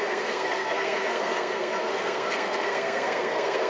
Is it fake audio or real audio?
fake